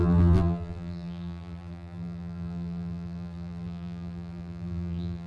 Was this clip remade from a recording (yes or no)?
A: yes